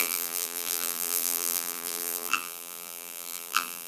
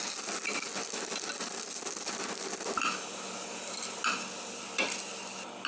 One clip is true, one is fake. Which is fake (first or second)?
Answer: first